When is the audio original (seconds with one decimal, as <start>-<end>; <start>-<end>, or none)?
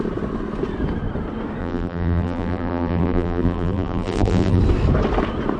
0.0-1.6; 4.6-5.6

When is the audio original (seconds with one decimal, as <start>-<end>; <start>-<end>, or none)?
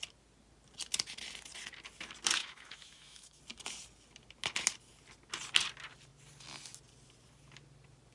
0.0-2.4; 3.4-8.1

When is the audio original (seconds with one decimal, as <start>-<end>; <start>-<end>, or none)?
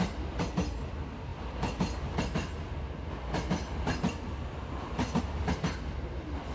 0.0-6.5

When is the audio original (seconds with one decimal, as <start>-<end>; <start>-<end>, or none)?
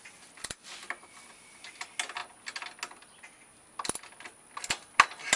0.0-5.4